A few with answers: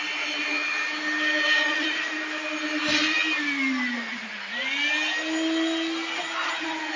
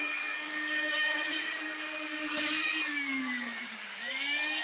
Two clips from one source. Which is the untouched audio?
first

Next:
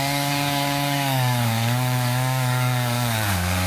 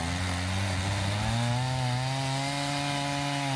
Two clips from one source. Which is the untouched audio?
second